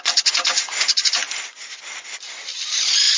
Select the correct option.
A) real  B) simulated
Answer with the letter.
A